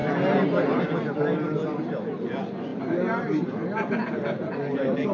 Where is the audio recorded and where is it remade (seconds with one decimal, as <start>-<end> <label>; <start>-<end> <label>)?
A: 0.0-5.1 recorded